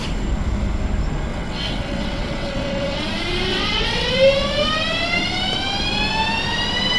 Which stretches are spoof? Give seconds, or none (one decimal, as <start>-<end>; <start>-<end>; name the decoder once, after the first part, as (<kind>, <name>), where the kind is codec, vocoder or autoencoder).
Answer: 1.3-3.0 (vocoder, WaveNeXt); 3.5-4.1